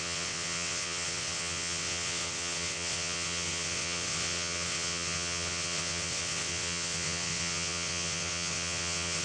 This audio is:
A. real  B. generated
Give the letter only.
B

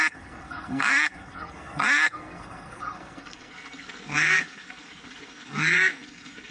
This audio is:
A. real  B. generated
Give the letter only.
B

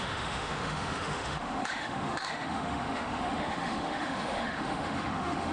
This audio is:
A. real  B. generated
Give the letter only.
B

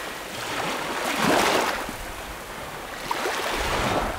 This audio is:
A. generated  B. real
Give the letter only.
B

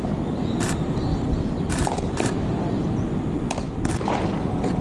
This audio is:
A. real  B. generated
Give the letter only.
A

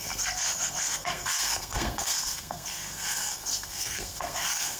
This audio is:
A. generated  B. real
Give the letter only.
A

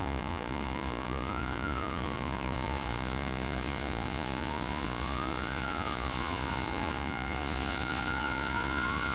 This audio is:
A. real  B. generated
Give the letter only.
B